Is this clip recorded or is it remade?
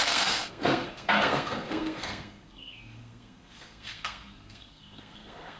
remade